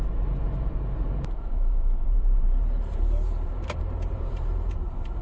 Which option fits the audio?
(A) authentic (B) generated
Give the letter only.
B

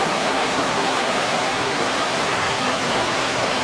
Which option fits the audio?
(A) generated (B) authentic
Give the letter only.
A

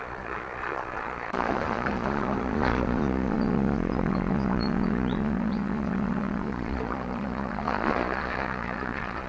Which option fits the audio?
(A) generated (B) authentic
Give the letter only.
A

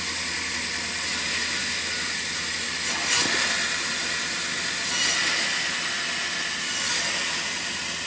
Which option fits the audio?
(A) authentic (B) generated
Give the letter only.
A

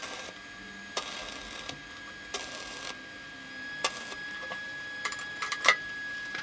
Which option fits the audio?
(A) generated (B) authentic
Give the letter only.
B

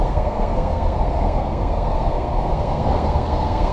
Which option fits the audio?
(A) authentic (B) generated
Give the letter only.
B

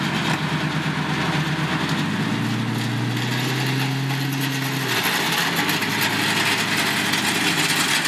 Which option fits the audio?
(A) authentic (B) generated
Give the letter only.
A